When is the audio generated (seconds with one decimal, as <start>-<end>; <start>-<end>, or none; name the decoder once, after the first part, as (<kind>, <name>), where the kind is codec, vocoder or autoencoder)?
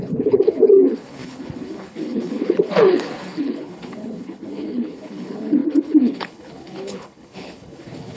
0.0-8.2 (codec, HILCodec)